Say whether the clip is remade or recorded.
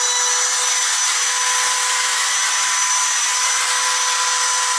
recorded